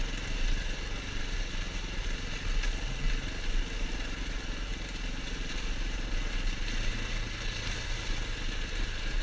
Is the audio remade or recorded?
recorded